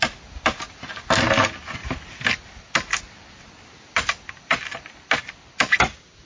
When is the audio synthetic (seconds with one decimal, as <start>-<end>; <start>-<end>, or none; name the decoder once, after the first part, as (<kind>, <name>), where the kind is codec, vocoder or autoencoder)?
none